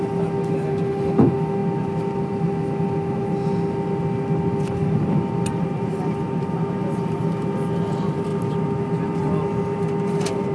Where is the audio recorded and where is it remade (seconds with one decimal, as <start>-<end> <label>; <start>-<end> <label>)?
0.0-10.5 recorded

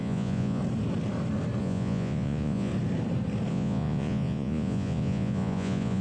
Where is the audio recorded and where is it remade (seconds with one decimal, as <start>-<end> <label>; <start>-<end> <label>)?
0.0-0.6 remade; 0.6-1.6 recorded; 1.6-2.7 remade; 2.7-3.5 recorded; 3.5-6.0 remade